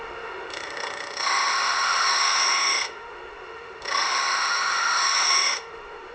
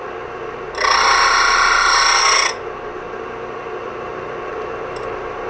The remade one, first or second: first